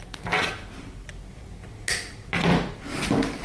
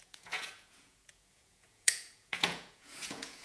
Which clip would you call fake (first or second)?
second